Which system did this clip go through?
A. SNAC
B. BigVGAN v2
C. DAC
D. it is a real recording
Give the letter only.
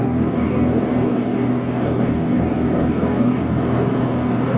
C